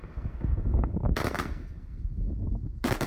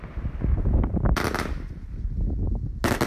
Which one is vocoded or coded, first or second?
first